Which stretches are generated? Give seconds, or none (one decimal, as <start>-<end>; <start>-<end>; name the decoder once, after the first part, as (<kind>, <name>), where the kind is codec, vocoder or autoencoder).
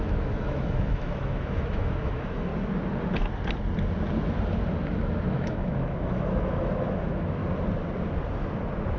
0.0-2.5 (autoencoder, DAC-VAE); 5.3-7.4